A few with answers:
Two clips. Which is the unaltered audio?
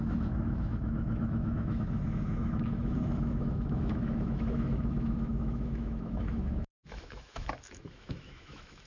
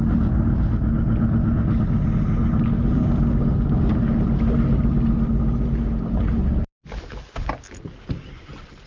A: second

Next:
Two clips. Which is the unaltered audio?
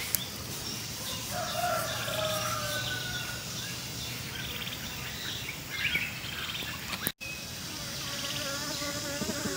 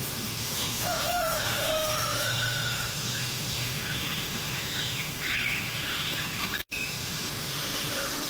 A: first